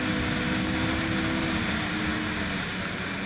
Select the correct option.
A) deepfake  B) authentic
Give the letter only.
B